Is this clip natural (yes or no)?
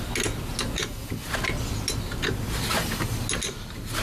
yes